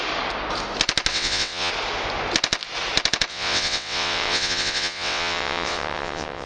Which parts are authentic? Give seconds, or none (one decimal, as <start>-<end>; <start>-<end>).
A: 0.0-1.1; 1.7-3.3